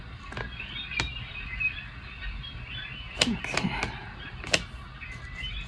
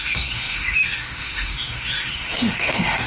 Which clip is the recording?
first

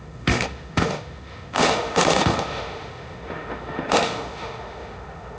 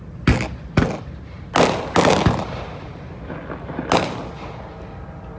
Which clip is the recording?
second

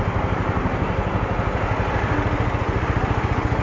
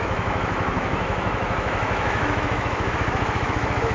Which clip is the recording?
first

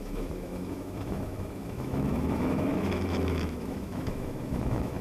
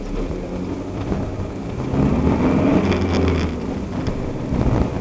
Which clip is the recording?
second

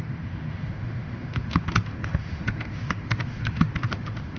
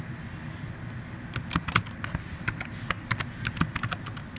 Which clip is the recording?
second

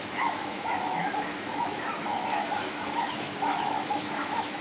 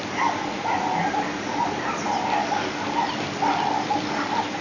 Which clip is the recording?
second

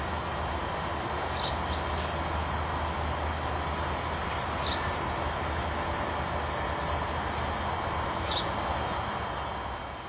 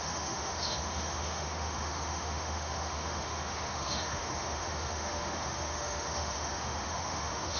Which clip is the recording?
first